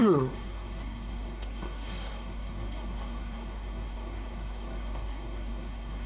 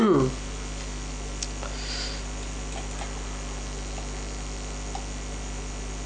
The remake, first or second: first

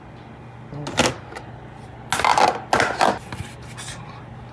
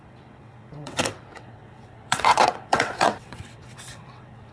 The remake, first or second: second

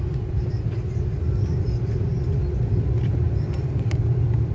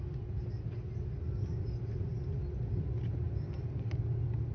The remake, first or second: first